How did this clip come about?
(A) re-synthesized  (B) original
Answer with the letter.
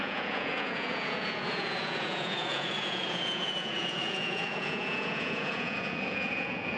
A